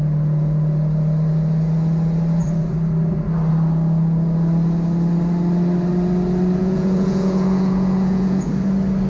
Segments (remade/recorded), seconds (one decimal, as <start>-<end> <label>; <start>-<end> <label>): 0.0-6.6 recorded; 6.6-8.5 remade; 8.5-9.1 recorded

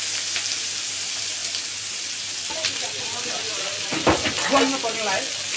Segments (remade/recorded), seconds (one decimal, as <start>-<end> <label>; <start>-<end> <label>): 0.0-5.6 recorded

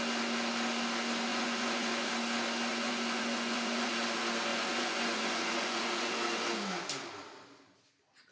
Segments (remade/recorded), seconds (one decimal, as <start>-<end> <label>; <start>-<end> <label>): 0.0-1.3 recorded; 1.3-2.1 remade; 2.1-2.7 recorded; 2.7-3.9 remade; 3.9-4.5 recorded; 4.5-6.1 remade; 6.1-8.3 recorded

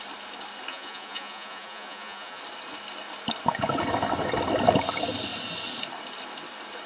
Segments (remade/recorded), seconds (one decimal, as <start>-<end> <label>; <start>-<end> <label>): 0.0-0.7 recorded; 0.7-2.4 remade; 2.4-6.9 recorded